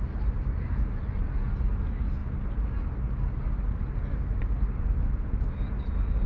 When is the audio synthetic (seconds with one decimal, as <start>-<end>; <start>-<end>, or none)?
none